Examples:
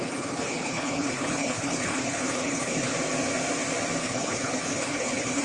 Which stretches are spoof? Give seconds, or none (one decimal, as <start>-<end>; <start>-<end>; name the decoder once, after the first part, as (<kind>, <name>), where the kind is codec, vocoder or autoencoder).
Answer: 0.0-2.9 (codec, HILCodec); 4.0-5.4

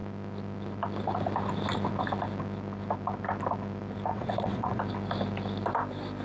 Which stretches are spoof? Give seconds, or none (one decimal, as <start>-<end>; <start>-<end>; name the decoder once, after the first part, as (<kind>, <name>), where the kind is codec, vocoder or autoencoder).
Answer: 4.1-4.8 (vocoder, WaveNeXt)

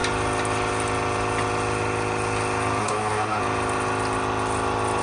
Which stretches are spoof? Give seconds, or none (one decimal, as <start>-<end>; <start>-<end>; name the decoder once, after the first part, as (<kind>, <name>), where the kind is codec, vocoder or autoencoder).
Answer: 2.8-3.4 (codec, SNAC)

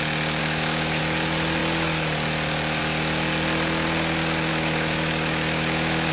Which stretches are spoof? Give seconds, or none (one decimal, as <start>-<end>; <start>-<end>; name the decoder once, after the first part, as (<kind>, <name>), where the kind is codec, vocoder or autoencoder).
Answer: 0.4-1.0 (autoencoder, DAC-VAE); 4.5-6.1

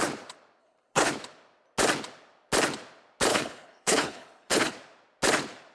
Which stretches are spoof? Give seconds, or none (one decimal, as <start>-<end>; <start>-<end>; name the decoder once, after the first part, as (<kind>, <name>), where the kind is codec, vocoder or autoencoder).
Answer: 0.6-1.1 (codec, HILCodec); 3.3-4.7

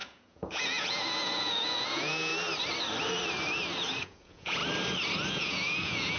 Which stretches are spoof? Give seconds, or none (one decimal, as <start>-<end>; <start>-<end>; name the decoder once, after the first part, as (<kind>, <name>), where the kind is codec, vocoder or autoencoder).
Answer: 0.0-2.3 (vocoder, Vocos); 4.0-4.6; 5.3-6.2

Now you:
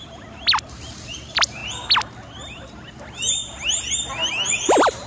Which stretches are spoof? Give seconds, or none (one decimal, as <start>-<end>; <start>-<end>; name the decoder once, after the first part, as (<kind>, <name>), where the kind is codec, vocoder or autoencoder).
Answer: 0.0-1.6 (vocoder, BigVGAN v2); 2.1-3.4; 4.5-5.1